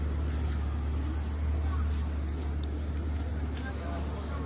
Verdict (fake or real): real